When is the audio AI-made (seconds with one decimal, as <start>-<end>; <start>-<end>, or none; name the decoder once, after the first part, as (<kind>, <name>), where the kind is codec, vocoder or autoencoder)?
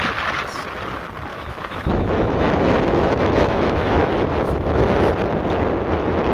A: 1.3-5.1 (autoencoder, DAC-VAE)